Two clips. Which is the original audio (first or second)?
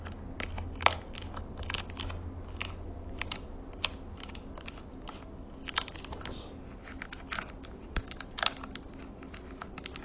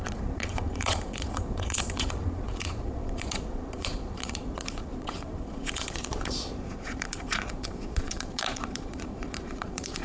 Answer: first